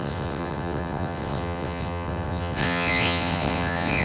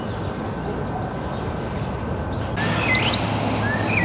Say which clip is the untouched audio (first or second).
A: second